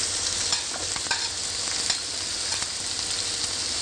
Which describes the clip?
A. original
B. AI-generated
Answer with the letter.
A